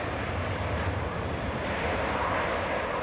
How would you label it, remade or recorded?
recorded